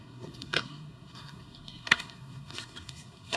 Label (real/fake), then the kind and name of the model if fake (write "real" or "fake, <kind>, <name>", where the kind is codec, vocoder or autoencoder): fake, codec, SNAC